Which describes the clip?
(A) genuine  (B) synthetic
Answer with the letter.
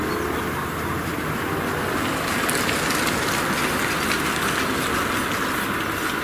A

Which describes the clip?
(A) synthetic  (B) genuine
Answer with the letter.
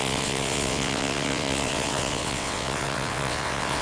A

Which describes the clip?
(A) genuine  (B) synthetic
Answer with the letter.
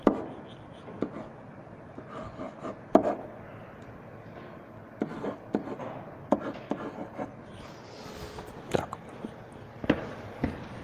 A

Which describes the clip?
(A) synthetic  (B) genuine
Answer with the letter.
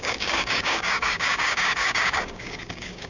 A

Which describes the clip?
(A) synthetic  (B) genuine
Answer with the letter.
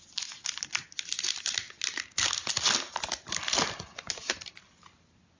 B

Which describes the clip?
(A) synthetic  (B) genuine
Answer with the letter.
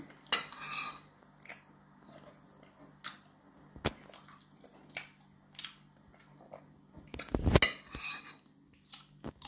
B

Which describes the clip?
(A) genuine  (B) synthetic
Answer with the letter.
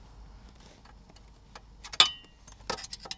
A